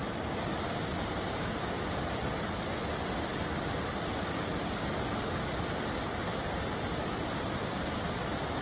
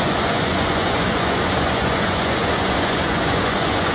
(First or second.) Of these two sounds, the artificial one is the second